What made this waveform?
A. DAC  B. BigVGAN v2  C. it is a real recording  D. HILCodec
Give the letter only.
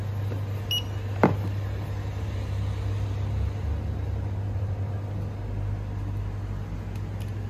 C